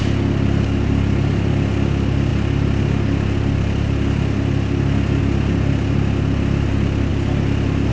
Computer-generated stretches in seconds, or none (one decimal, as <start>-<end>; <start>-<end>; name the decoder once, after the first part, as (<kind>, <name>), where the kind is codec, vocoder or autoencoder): none